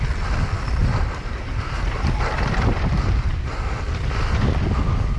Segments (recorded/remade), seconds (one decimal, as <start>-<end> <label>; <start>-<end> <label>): 0.0-0.8 recorded; 0.8-3.8 remade; 3.8-5.2 recorded